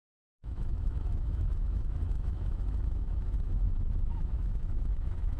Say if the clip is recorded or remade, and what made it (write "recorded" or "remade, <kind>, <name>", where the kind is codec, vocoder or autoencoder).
remade, autoencoder, DAC-VAE